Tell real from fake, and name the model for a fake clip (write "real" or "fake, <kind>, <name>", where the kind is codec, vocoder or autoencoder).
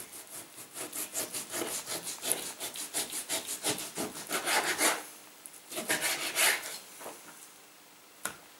real